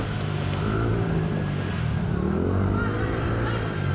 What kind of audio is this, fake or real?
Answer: real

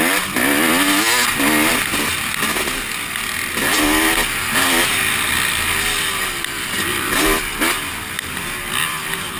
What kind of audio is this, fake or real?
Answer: real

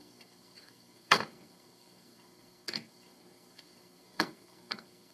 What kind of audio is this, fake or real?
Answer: fake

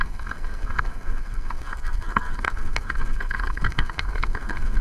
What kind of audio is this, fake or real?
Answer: fake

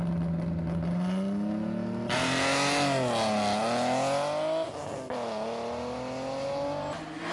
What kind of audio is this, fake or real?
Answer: real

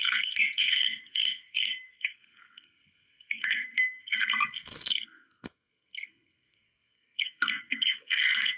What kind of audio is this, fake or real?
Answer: fake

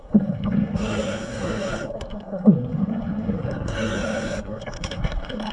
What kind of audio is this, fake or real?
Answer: fake